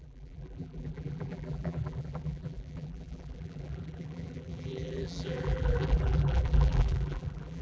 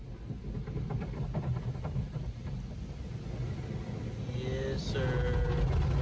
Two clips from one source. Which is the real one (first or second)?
second